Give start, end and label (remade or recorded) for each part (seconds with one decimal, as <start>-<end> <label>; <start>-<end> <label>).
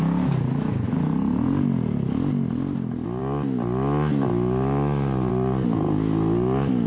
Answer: 0.0-6.9 recorded